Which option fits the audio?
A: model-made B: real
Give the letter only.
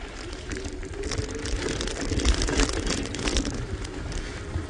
B